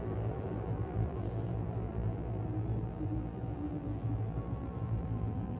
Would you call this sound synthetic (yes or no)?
yes